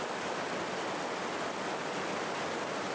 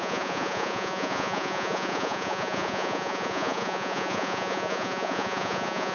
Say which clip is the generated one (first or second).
second